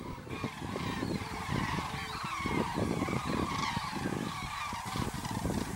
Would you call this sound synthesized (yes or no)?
yes